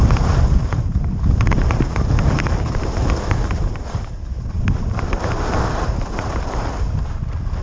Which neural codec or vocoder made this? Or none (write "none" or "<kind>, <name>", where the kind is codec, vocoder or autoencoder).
none